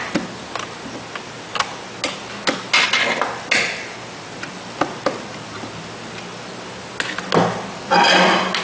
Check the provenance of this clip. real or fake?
real